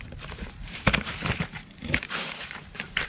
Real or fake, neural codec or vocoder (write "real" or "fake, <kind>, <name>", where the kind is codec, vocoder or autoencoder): fake, vocoder, BigVGAN v2